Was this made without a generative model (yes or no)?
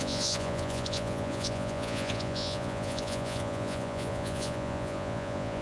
no